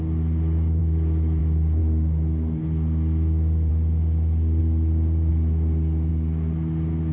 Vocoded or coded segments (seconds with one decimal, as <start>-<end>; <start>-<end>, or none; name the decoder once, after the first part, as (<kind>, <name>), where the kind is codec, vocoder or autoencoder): 0.8-1.4 (vocoder, BigVGAN v2); 4.6-5.3